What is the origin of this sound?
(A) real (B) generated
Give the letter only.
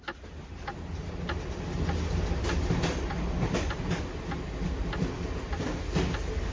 A